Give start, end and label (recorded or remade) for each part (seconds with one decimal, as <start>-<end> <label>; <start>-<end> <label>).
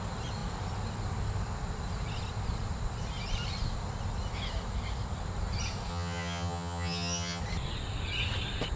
0.0-5.9 recorded; 5.9-7.4 remade; 7.4-8.8 recorded